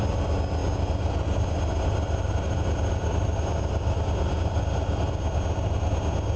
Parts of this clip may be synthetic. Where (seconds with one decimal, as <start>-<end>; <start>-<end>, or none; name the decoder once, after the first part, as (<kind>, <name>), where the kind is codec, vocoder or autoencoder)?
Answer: none